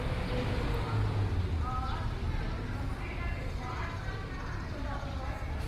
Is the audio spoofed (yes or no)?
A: no